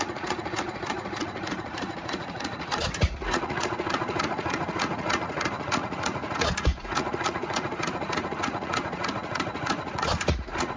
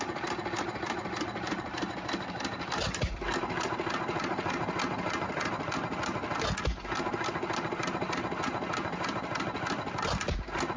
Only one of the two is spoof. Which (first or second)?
first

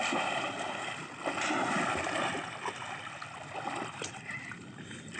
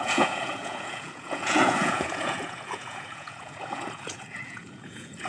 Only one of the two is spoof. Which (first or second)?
second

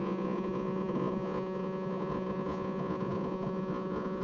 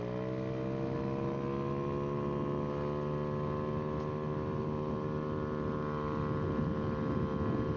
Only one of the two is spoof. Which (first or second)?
first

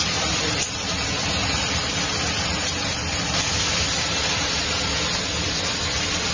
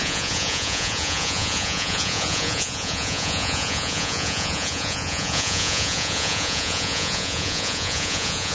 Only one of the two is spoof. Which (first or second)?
second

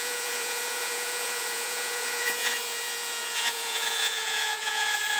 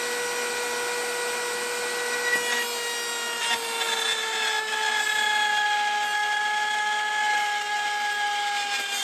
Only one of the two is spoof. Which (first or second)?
first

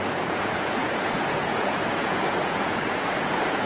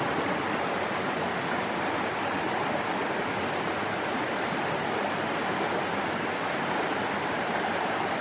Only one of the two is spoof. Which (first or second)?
first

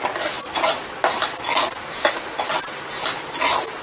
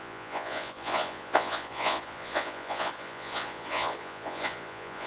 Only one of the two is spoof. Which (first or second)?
second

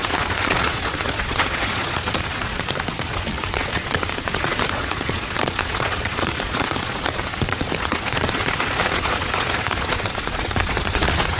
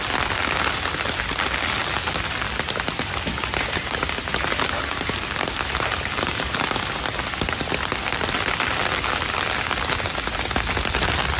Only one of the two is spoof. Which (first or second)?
first